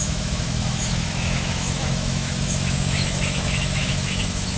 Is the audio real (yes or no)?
no